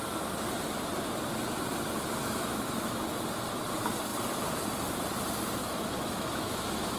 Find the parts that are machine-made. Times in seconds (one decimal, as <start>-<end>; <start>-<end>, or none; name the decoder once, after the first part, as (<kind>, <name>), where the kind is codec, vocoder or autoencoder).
2.2-3.0 (autoencoder, DAC-VAE); 5.6-7.0